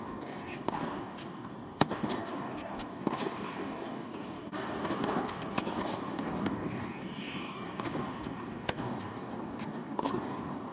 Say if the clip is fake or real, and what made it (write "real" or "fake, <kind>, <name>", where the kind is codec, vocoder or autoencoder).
fake, codec, DAC